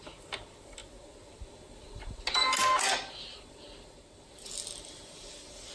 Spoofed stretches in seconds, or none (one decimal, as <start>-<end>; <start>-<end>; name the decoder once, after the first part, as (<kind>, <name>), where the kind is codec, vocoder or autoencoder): none